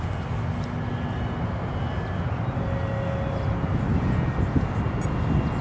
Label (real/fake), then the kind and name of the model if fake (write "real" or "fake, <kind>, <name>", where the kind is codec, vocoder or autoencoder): real